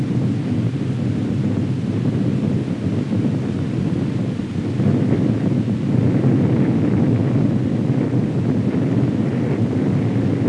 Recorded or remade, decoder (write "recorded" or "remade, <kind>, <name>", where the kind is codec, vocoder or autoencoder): recorded